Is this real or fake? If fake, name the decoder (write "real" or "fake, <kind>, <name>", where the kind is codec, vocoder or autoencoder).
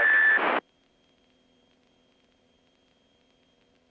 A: real